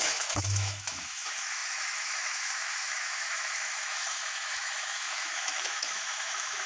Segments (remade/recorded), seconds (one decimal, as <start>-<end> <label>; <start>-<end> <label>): 0.0-6.7 remade